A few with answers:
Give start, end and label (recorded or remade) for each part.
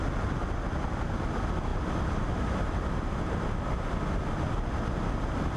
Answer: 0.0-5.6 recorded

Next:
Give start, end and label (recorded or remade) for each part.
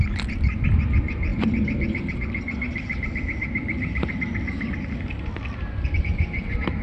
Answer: 0.0-1.3 recorded; 1.3-5.3 remade; 5.3-6.8 recorded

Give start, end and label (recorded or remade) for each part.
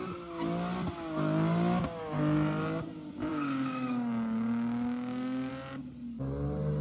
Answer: 0.0-3.3 recorded; 3.3-5.5 remade; 5.5-6.8 recorded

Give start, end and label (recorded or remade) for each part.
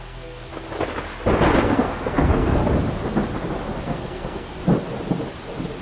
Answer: 0.0-0.5 remade; 0.5-1.6 recorded; 1.6-2.6 remade; 2.6-3.8 recorded; 3.8-4.6 remade; 4.6-5.8 recorded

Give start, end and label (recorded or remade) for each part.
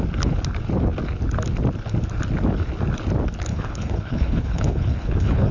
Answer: 0.0-3.5 recorded; 3.5-5.5 remade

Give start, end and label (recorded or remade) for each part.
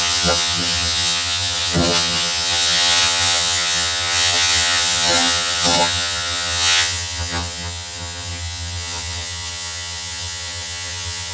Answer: 0.0-11.3 remade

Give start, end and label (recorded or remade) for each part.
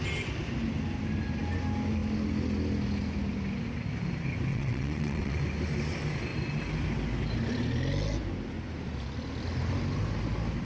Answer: 0.0-4.5 recorded; 4.5-5.4 remade; 5.4-10.6 recorded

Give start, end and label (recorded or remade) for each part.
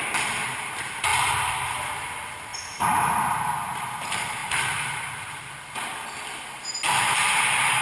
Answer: 0.0-2.5 recorded; 2.5-3.8 remade; 3.8-4.4 recorded; 4.4-5.1 remade; 5.1-7.8 recorded